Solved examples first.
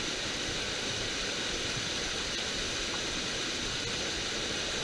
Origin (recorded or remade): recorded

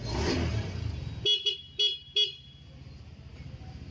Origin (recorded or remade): recorded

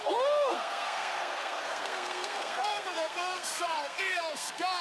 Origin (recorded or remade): remade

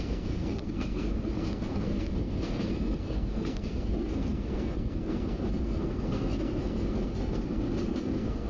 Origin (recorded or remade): remade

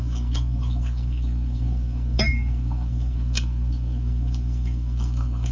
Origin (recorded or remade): remade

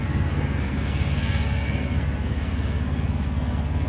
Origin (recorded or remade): remade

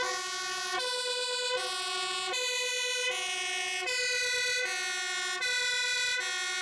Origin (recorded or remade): recorded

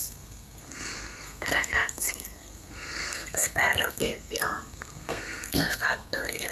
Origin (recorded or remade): remade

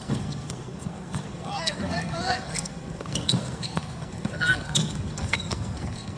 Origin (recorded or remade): remade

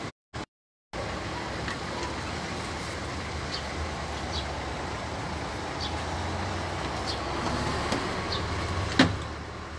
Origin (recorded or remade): recorded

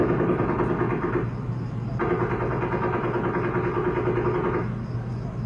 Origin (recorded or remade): recorded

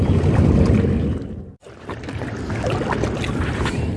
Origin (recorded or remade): recorded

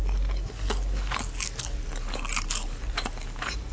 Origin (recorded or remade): recorded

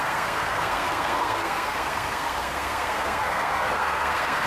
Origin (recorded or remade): remade